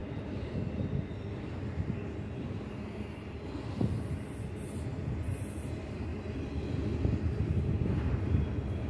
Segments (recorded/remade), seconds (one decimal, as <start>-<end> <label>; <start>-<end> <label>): 0.0-8.9 recorded